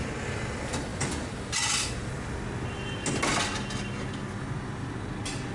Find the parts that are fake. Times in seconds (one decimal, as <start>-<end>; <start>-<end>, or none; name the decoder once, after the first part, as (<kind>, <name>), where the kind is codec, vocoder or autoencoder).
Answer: none